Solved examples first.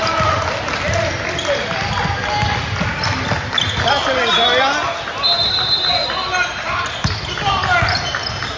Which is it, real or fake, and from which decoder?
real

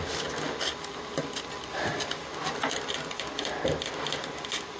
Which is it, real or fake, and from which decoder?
real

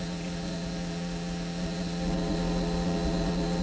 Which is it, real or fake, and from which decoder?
fake, vocoder, Vocos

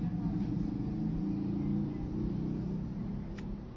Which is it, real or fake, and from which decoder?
real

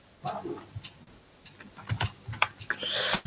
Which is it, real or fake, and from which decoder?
real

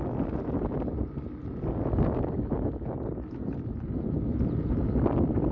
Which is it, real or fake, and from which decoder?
real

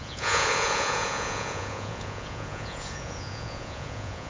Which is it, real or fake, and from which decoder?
fake, vocoder, Vocos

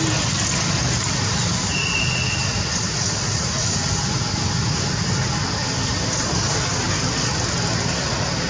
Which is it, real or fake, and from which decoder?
real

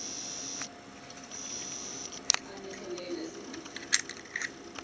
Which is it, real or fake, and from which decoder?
real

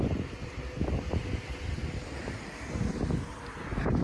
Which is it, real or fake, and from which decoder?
real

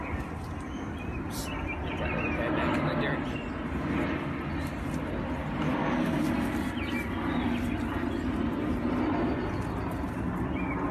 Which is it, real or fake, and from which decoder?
real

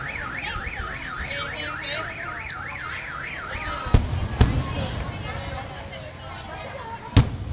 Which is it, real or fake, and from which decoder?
real